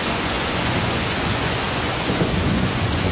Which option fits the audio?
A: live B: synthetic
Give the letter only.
B